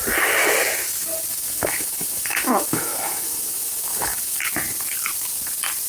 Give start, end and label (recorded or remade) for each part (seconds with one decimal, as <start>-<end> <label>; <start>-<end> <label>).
0.0-1.3 recorded; 1.3-4.4 remade; 4.4-5.9 recorded